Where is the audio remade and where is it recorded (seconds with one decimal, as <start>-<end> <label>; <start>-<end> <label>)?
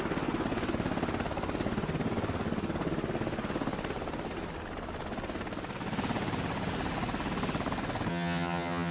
0.0-8.1 recorded; 8.1-8.9 remade